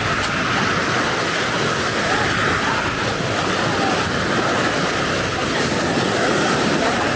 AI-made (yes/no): no